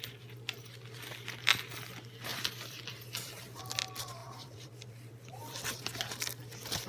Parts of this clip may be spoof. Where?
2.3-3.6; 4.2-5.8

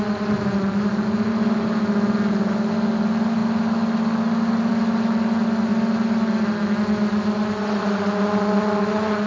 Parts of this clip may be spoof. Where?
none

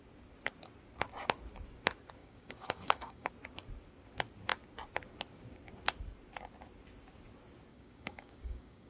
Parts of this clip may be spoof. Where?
2.2-3.3; 7.7-8.9

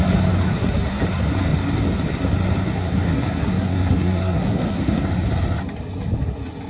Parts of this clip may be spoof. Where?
0.5-1.0; 2.7-5.0